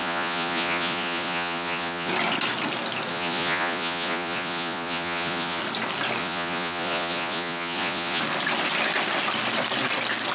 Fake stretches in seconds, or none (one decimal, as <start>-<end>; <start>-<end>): 0.0-2.1; 3.1-5.6; 6.2-8.2